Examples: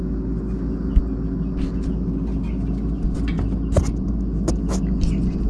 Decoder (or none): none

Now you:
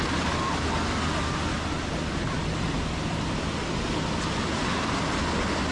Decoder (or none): none